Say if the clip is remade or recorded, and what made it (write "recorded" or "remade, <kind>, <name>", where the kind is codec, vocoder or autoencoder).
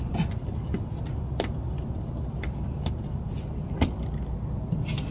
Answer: recorded